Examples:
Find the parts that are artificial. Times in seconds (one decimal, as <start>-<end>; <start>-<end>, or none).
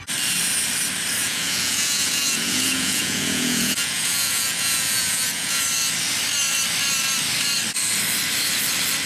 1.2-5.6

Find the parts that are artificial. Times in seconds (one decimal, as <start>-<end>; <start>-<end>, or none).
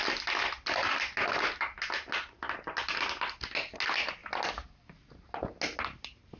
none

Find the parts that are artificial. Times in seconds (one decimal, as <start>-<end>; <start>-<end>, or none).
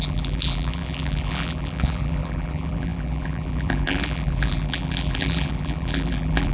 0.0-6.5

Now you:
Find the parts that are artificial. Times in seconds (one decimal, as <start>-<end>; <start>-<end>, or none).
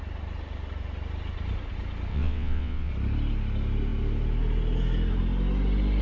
2.1-2.9